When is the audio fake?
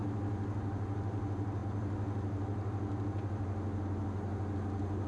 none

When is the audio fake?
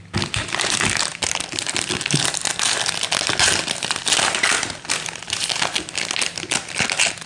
none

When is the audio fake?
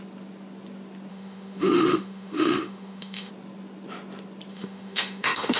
1.1-3.3 (autoencoder, DAC-VAE); 4.5-5.6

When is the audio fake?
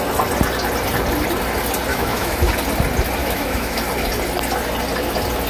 1.9-2.5 (autoencoder, DAC-VAE); 3.2-3.8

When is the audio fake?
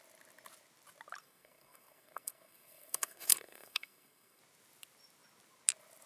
1.2-4.4 (codec, SNAC)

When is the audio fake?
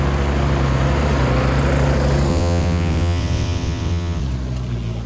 2.3-4.2 (vocoder, WaveNeXt)